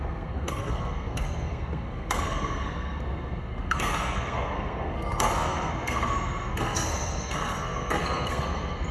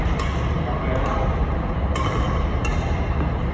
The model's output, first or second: first